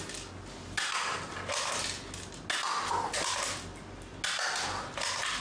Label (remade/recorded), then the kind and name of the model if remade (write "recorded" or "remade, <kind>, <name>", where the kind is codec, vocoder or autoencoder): recorded